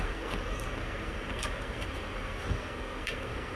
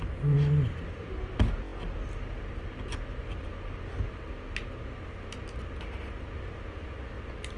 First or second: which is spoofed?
first